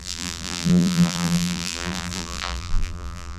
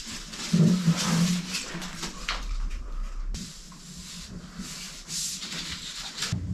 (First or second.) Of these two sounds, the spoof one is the first